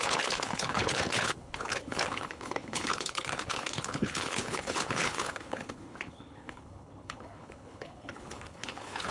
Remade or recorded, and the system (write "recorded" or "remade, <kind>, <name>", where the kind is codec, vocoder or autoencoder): remade, codec, HILCodec